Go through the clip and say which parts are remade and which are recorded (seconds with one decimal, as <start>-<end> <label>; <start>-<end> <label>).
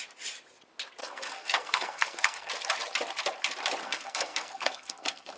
0.0-1.0 recorded; 1.0-2.5 remade; 2.5-3.8 recorded; 3.8-5.4 remade